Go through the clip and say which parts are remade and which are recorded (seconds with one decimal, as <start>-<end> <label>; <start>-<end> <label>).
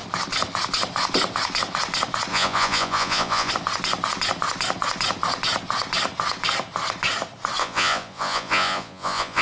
0.0-2.3 recorded; 2.3-3.5 remade; 3.5-7.6 recorded; 7.6-9.4 remade